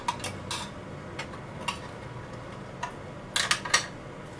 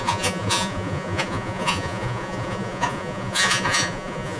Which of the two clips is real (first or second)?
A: first